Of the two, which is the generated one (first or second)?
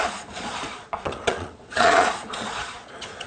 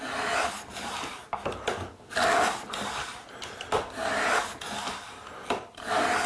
first